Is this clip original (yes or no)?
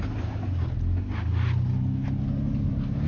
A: yes